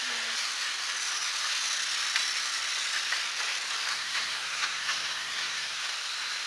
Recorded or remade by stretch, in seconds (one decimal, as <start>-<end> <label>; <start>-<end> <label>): 0.0-3.9 recorded; 3.9-5.8 remade; 5.8-6.5 recorded